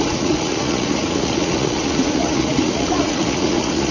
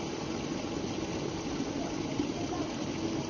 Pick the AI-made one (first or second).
first